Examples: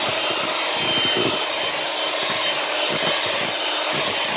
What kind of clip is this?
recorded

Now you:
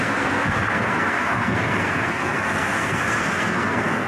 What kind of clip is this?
remade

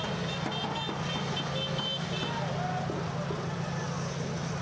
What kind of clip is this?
recorded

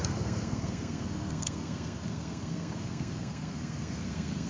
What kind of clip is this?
remade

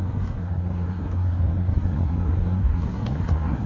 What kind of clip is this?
remade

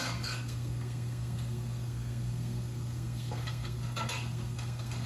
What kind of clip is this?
remade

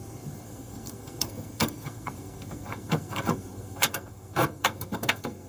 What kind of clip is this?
remade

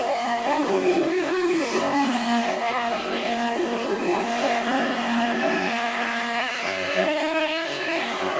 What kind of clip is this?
remade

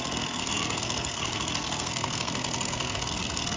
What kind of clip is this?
remade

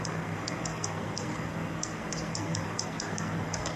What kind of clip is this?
remade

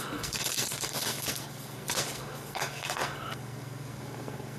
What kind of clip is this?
remade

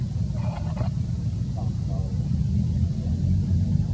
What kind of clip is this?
recorded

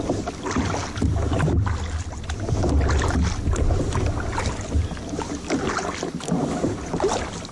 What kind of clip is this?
recorded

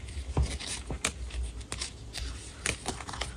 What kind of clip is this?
recorded